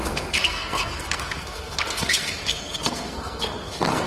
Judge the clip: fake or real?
fake